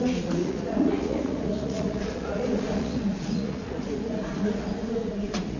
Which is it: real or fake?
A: fake